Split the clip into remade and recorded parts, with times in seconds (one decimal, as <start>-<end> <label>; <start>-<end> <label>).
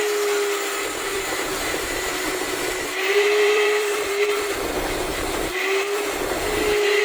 0.0-1.1 recorded; 1.1-4.6 remade; 4.6-5.1 recorded; 5.1-7.0 remade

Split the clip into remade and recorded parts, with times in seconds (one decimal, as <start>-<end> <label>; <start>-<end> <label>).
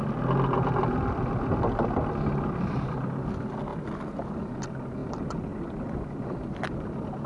0.0-3.7 recorded; 3.7-4.5 remade; 4.5-5.0 recorded; 5.0-6.8 remade; 6.8-7.3 recorded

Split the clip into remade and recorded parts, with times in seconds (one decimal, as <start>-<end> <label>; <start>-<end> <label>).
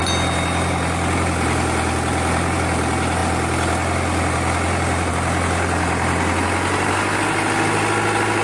0.0-8.4 recorded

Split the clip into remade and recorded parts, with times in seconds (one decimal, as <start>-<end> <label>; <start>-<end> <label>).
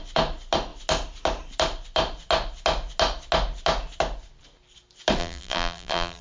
0.0-5.2 recorded; 5.2-6.2 remade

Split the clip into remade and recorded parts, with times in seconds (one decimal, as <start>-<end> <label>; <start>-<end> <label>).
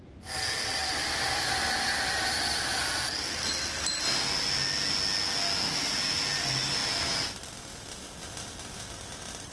0.0-0.8 recorded; 0.8-1.5 remade; 1.5-9.5 recorded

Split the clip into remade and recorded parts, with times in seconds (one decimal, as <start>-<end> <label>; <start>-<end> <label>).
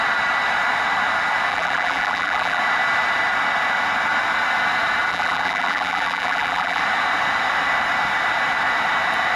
0.0-1.5 recorded; 1.5-2.6 remade; 2.6-5.1 recorded; 5.1-6.8 remade; 6.8-9.4 recorded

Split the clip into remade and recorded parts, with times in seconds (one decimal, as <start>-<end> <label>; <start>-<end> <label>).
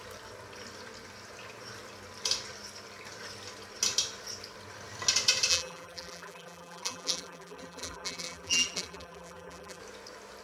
0.0-5.5 recorded; 5.5-9.8 remade; 9.8-10.4 recorded